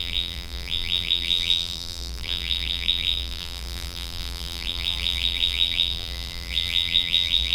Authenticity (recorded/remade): remade